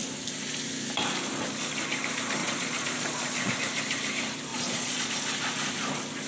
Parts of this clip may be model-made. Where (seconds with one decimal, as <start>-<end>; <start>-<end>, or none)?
2.4-3.5; 4.5-5.1